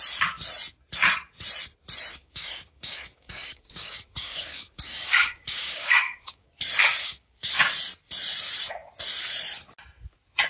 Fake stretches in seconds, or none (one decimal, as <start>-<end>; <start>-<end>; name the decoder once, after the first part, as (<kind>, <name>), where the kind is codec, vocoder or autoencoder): 2.1-6.5 (codec, DAC); 7.0-7.5